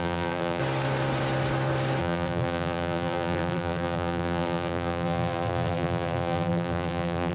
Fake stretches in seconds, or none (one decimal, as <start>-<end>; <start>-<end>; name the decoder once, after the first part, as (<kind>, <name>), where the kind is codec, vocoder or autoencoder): 0.0-0.6 (vocoder, BigVGAN v2); 2.0-7.3